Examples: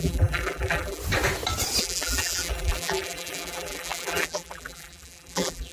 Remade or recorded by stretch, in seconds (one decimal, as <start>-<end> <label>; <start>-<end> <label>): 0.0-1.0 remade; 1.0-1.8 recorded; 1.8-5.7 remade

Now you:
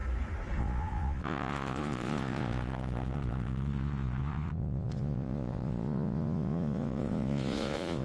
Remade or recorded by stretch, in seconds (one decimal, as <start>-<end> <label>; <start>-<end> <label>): 0.0-0.6 recorded; 0.6-8.0 remade

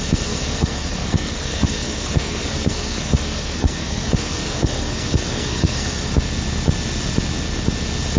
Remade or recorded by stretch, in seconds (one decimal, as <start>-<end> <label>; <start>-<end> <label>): 0.0-6.1 remade; 6.1-8.2 recorded